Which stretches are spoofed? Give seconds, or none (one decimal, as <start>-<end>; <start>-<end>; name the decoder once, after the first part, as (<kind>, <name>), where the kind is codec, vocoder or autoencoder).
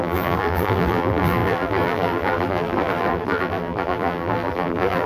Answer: 0.0-5.1 (vocoder, BigVGAN v2)